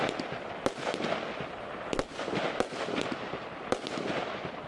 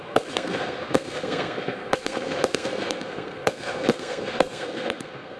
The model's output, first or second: second